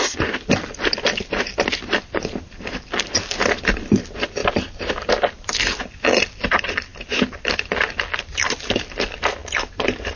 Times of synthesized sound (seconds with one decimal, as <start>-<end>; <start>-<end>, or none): 4.4-5.1; 9.4-10.2